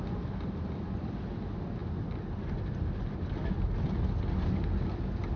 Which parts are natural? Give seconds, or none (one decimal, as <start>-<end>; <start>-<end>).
0.0-5.4